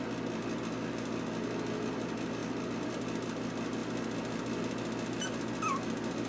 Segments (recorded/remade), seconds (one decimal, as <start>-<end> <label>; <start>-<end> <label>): 0.0-6.3 recorded